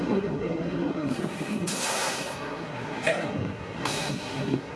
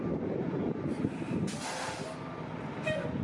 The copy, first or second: first